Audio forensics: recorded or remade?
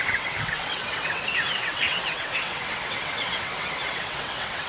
remade